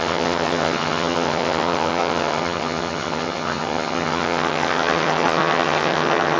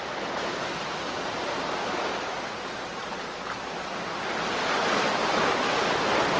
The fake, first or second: first